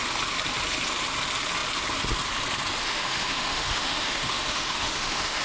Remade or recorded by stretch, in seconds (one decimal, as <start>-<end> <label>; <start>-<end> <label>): 0.0-2.8 recorded; 2.8-5.4 remade

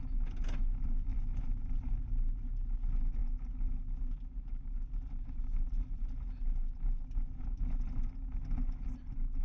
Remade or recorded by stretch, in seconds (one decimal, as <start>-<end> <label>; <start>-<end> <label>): 0.0-1.1 recorded; 1.1-2.1 remade; 2.1-9.4 recorded